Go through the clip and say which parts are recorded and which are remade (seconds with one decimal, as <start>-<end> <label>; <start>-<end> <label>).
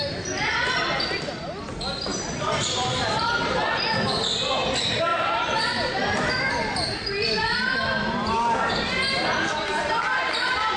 0.0-0.5 recorded; 0.5-1.7 remade; 1.7-2.1 recorded; 2.1-3.1 remade; 3.1-5.1 recorded; 5.1-6.5 remade; 6.5-10.8 recorded